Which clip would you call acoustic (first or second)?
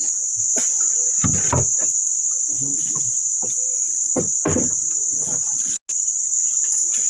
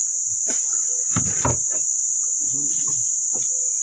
first